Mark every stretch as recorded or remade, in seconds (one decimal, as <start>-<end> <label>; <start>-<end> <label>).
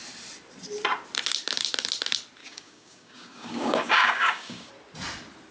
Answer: 0.0-2.4 recorded; 2.4-4.7 remade; 4.7-5.5 recorded